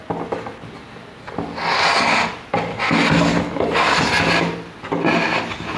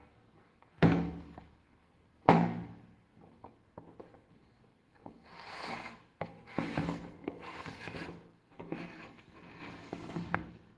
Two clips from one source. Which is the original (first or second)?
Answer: first